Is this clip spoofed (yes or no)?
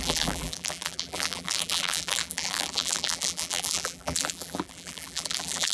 yes